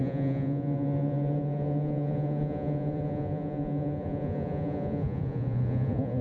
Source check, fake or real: fake